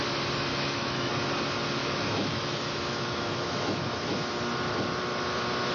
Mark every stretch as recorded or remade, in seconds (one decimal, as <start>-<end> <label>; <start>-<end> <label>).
0.0-0.5 recorded; 0.5-1.1 remade; 1.1-1.8 recorded; 1.8-4.1 remade; 4.1-5.7 recorded